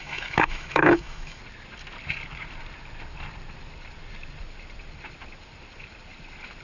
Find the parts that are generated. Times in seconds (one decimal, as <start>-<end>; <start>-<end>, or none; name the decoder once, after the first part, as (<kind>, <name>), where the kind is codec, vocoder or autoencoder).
0.0-1.4 (autoencoder, DAC-VAE)